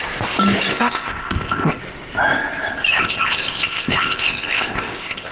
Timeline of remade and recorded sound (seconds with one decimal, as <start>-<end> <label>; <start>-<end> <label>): 0.0-0.7 recorded; 0.7-1.8 remade; 1.8-2.9 recorded; 2.9-5.3 remade